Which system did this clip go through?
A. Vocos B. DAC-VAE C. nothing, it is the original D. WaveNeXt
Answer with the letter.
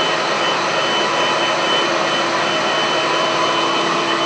C